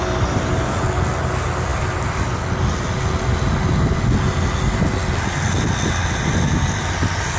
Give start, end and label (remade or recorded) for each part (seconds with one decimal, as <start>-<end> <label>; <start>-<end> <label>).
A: 0.0-7.4 recorded